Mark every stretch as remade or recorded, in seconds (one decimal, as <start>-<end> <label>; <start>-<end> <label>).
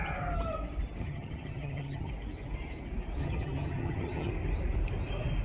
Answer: 0.0-1.0 recorded; 1.0-2.1 remade; 2.1-3.2 recorded; 3.2-4.3 remade; 4.3-5.4 recorded